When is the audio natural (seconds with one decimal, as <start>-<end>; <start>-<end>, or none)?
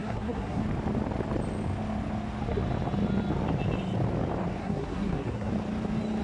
0.6-4.6; 5.5-6.2